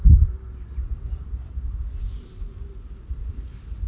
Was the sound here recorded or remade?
recorded